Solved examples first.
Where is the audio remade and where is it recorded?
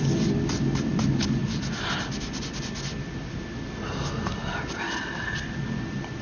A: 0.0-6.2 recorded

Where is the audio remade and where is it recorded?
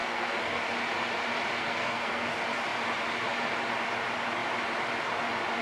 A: 0.0-0.6 remade; 0.6-1.6 recorded; 1.6-2.3 remade; 2.3-5.6 recorded